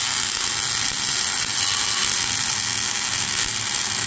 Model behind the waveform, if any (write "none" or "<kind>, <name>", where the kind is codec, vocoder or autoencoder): none